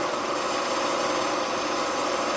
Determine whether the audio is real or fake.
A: real